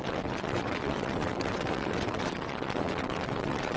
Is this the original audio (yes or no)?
no